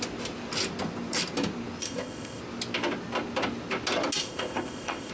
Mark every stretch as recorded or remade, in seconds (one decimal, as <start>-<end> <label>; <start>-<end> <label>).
0.0-1.8 recorded; 1.8-2.4 remade; 2.4-4.2 recorded; 4.2-5.1 remade